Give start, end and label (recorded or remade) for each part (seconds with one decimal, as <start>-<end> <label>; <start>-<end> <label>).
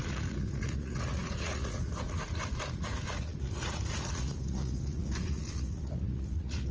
0.0-6.7 remade